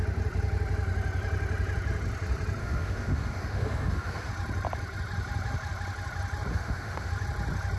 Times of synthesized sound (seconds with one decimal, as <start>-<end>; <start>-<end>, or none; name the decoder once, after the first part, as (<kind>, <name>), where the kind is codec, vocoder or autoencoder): 2.6-4.3 (autoencoder, DAC-VAE); 6.5-7.1